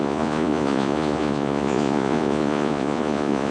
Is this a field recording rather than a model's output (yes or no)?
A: no